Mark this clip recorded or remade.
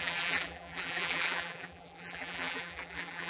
remade